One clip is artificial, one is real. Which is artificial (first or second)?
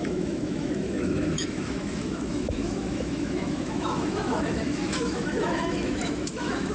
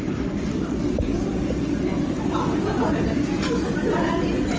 first